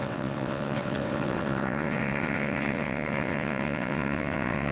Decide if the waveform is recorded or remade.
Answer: remade